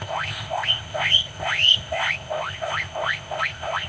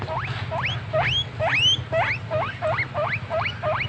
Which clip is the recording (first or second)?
second